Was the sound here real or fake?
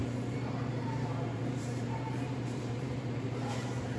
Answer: fake